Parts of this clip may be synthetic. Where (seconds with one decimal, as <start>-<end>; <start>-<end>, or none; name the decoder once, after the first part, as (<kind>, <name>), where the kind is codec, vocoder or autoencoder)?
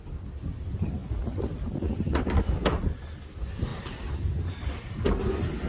none